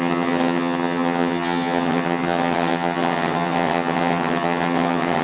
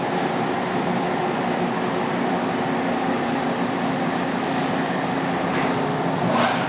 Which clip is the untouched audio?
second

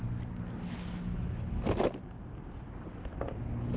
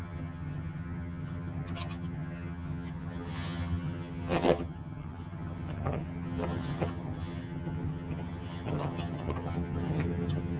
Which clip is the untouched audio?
first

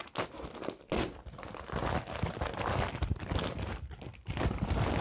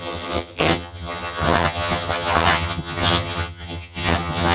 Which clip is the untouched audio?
first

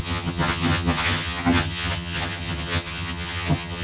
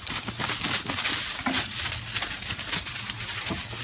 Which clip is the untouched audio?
second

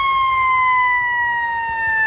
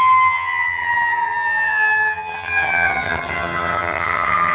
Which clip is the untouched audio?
first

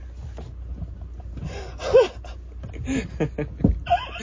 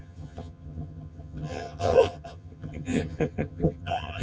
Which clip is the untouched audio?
first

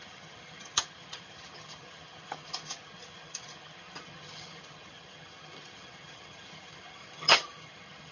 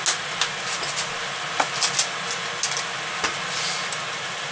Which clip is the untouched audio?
second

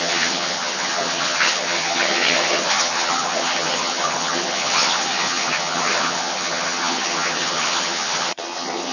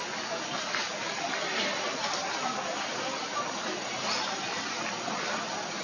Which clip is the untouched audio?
second